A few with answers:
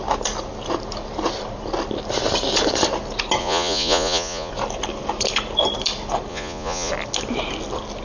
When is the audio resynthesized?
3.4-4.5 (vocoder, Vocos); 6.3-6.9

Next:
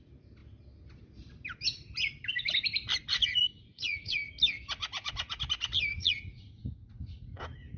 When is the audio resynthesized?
3.1-4.2 (vocoder, Vocos); 4.8-5.4; 5.9-7.8

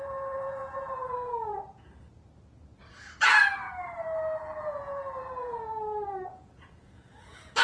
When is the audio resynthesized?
0.0-1.5 (vocoder, Vocos); 4.6-5.7; 6.3-7.6

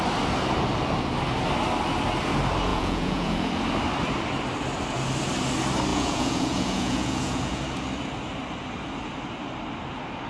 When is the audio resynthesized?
2.7-3.5 (vocoder, Vocos); 5.9-7.6

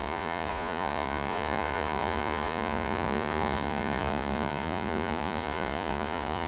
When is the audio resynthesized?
0.0-6.5 (vocoder, Vocos)

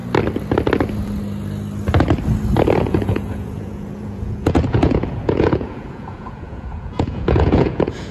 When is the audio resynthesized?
2.8-8.1 (vocoder, Vocos)

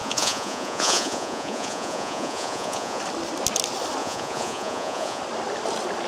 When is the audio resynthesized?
0.0-3.0 (vocoder, Vocos); 4.0-5.2